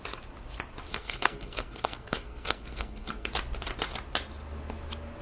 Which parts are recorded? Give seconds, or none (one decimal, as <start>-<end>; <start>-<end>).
0.0-0.9; 3.3-5.2